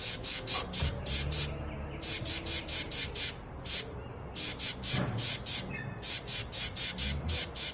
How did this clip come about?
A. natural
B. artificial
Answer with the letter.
A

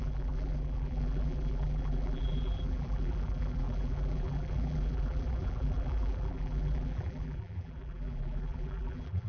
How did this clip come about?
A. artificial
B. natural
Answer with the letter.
A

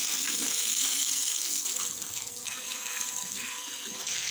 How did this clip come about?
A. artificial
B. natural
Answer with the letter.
A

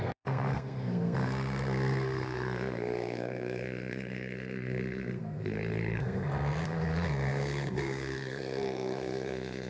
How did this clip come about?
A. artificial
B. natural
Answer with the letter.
A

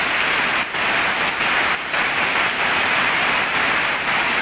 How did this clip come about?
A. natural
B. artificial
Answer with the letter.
A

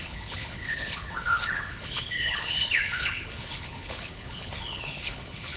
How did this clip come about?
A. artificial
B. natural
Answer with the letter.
A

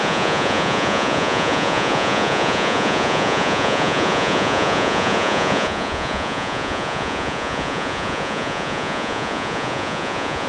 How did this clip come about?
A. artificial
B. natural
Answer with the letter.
A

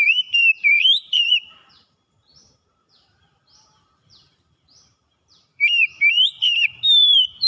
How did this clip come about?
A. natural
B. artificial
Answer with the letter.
B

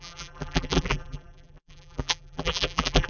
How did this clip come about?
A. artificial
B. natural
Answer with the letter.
A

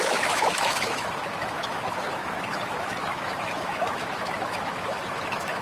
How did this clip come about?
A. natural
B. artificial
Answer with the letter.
B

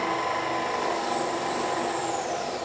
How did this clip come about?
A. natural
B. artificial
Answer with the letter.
A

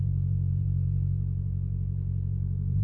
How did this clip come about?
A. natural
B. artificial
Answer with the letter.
B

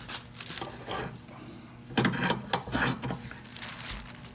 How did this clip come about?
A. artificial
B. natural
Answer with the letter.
B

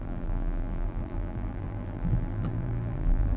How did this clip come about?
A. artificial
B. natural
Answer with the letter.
A